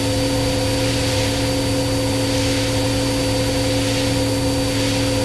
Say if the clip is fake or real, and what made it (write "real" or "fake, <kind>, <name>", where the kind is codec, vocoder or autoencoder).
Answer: real